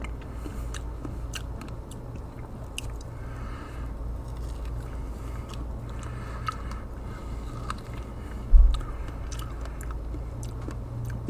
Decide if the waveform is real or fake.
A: real